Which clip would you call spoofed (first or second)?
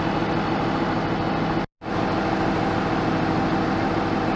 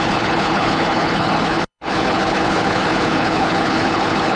second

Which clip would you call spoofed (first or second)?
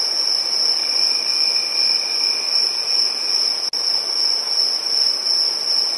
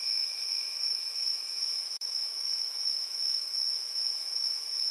second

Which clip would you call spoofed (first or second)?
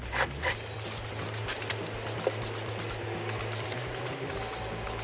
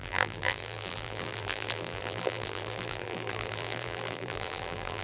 second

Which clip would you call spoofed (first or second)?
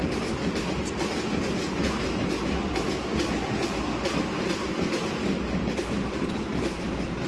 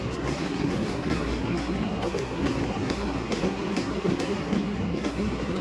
second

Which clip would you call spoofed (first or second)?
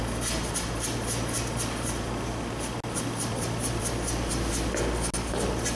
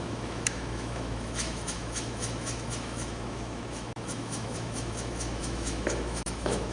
second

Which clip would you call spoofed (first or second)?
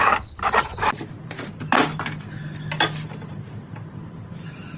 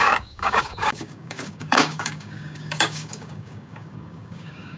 second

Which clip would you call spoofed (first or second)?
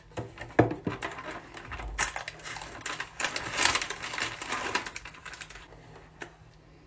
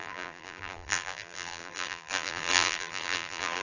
second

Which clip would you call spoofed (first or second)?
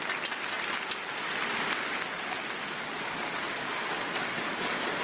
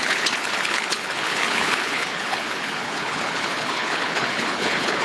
second